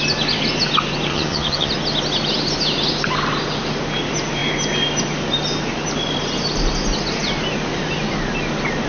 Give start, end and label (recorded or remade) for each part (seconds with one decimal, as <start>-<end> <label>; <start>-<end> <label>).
0.0-1.1 recorded; 1.1-1.7 remade; 1.7-8.9 recorded